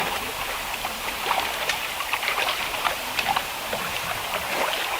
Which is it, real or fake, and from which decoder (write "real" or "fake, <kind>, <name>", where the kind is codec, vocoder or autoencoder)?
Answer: fake, vocoder, BigVGAN v2